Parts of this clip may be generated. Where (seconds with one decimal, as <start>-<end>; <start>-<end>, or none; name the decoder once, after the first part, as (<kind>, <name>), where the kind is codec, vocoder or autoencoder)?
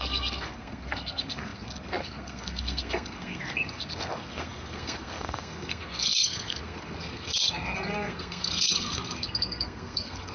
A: 0.0-10.3 (codec, SNAC)